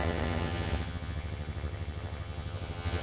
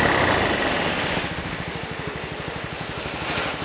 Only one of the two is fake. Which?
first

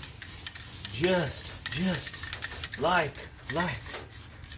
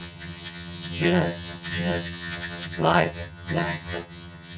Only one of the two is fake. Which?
second